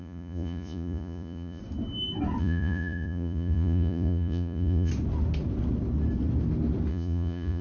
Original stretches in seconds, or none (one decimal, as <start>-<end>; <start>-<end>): 1.6-2.4; 4.9-6.9